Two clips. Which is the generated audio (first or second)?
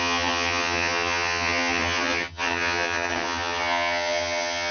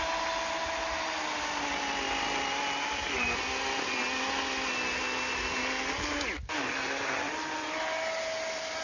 first